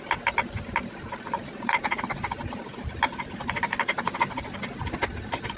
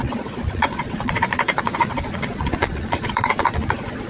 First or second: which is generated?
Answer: second